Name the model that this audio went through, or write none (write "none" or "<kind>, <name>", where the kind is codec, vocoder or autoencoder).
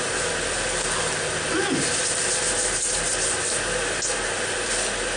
none